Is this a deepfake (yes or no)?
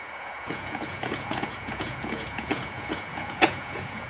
yes